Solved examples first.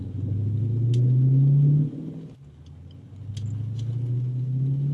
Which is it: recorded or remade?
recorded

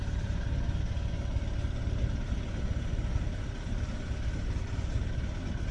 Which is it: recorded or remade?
recorded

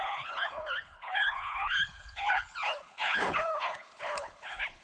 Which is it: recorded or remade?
remade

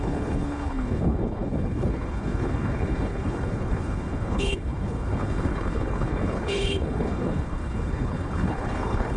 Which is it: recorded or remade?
remade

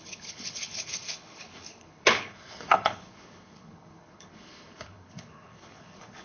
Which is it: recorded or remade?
remade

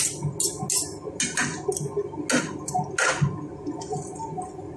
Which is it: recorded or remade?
recorded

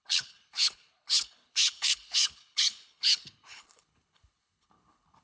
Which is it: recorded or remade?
remade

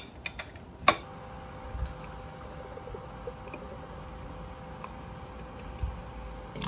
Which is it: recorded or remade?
recorded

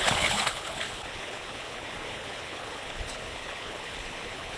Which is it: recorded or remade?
remade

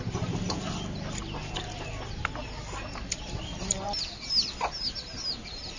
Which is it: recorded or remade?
recorded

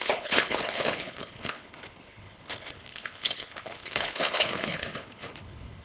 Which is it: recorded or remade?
remade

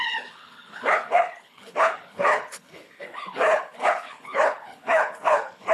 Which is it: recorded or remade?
remade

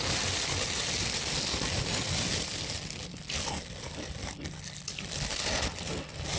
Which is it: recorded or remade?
recorded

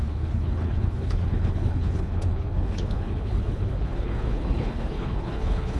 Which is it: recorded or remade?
remade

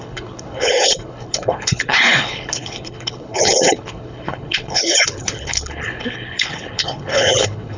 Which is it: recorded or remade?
remade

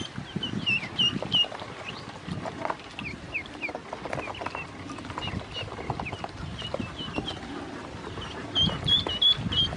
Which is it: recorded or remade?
recorded